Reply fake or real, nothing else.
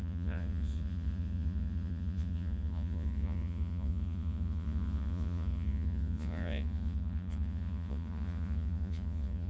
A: fake